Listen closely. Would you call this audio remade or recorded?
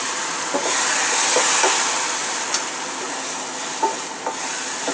recorded